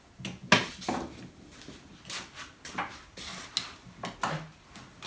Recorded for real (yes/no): yes